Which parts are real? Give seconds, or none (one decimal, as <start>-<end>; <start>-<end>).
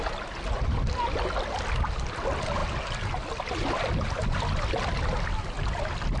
0.0-6.2